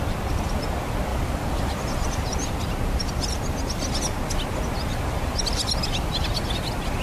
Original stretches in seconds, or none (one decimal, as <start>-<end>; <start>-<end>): 0.0-1.1; 2.2-7.0